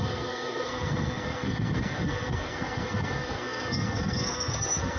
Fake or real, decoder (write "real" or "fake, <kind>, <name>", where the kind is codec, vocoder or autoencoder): fake, codec, SNAC